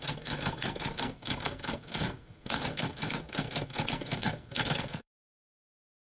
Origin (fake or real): fake